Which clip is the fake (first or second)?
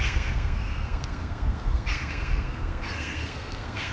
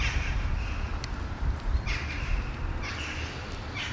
first